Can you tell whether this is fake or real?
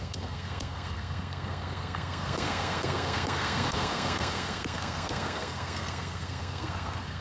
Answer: fake